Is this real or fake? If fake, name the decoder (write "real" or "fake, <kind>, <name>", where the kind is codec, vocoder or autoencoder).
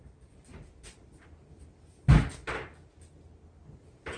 real